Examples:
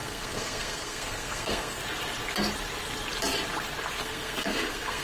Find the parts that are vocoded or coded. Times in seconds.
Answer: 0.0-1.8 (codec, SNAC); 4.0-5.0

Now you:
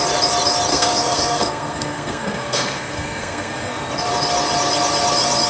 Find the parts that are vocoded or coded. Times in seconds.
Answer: 0.7-3.8 (codec, SNAC)